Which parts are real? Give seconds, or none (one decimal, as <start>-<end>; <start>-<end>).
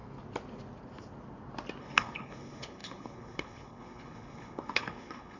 0.0-1.8